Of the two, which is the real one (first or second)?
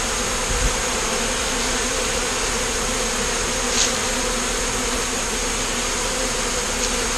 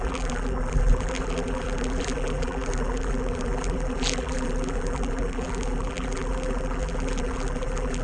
first